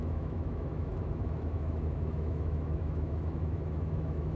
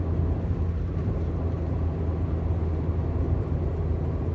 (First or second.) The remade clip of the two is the first